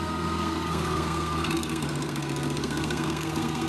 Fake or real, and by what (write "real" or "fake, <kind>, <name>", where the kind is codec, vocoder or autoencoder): fake, codec, SNAC